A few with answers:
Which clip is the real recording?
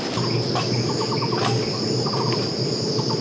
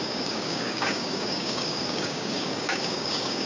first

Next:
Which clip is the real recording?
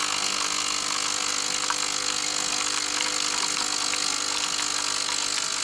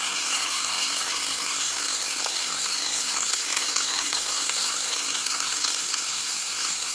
first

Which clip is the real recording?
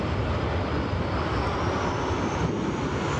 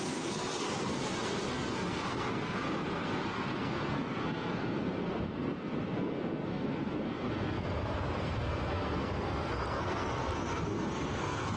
first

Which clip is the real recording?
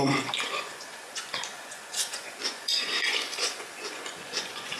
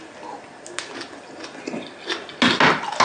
second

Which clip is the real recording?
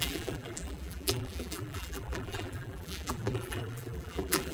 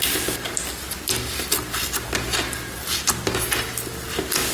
second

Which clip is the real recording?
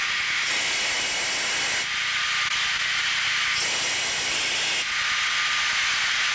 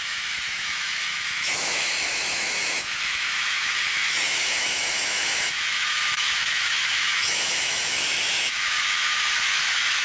first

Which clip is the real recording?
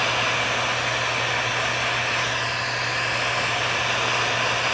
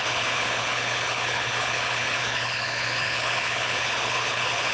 first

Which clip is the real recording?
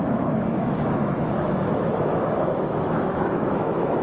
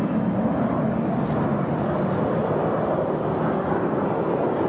second